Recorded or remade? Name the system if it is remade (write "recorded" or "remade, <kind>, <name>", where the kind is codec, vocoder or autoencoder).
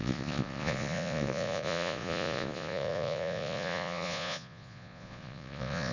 remade, vocoder, Vocos